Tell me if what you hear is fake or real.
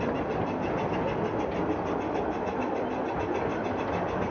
real